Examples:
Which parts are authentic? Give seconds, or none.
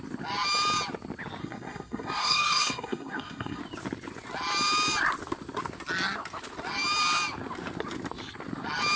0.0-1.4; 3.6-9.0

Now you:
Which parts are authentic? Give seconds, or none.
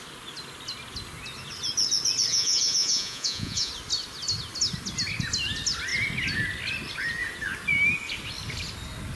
0.0-2.3; 3.7-9.2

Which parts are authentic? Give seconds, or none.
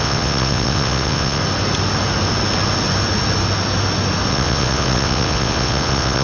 1.4-4.3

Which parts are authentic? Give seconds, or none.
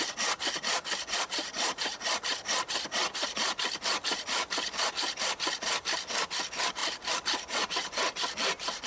0.0-8.9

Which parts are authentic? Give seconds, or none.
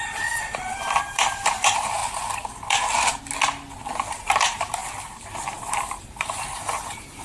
2.0-4.1; 4.8-5.7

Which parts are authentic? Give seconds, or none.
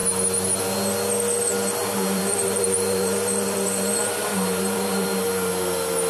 0.0-1.8; 5.5-6.1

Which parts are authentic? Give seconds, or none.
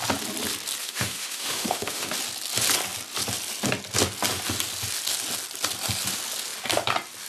0.0-0.8; 2.1-7.3